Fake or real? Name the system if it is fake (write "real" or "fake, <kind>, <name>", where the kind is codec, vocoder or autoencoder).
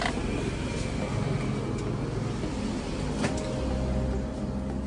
real